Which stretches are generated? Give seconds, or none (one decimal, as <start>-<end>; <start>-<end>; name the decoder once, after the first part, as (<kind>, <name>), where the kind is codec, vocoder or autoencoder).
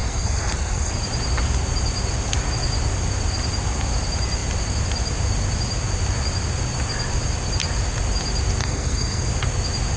0.0-0.9 (codec, SNAC); 8.6-9.3